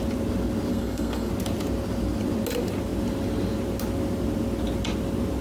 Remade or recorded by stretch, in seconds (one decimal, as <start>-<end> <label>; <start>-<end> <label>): 0.0-0.7 recorded; 0.7-1.3 remade; 1.3-5.4 recorded